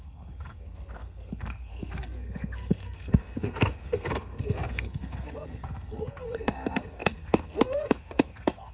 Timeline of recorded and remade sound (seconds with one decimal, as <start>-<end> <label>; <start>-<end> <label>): 0.0-8.7 remade

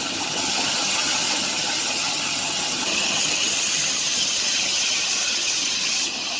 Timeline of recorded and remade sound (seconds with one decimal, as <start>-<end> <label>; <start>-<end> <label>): 0.0-6.4 remade

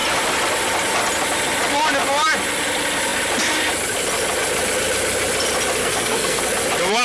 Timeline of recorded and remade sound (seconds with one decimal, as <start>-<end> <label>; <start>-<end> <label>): 0.0-5.8 recorded; 5.8-6.4 remade; 6.4-7.0 recorded

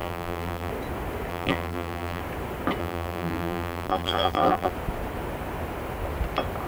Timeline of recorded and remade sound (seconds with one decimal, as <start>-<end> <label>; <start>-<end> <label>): 0.0-0.7 remade; 0.7-1.3 recorded; 1.3-2.2 remade; 2.2-2.8 recorded; 2.8-4.7 remade; 4.7-6.7 recorded

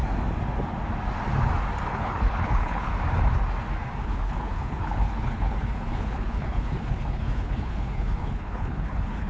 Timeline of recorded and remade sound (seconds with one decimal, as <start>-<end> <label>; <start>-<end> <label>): 0.0-1.9 recorded; 1.9-2.9 remade; 2.9-4.0 recorded; 4.0-9.3 remade